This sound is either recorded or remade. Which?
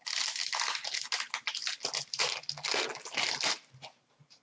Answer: recorded